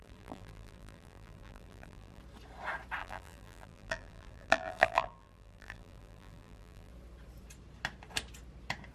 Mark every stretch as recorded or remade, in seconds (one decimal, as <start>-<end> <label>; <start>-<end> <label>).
0.0-2.2 remade; 2.2-3.0 recorded; 3.0-6.9 remade; 6.9-8.9 recorded